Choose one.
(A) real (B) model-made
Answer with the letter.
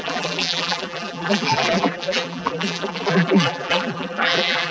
B